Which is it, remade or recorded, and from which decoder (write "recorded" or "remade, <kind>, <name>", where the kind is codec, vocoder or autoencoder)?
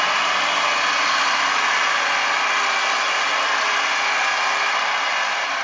recorded